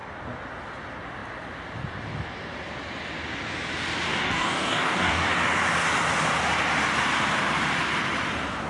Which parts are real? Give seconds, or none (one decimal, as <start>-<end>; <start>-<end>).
0.0-4.1; 5.3-8.7